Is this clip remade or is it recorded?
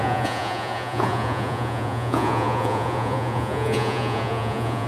remade